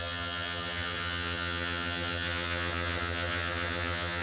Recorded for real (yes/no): no